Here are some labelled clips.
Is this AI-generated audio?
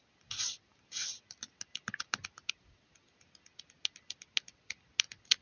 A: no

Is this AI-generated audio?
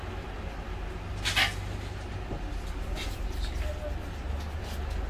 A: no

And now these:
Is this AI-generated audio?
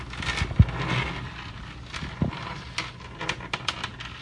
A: no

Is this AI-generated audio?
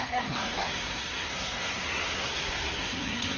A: yes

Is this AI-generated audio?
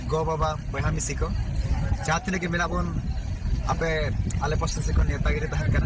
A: no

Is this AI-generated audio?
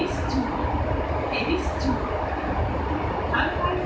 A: no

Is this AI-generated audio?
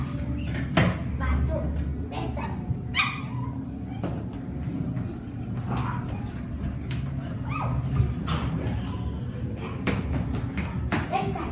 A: no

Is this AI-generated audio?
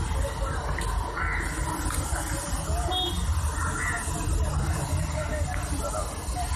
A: no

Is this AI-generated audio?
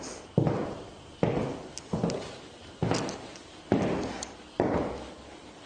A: no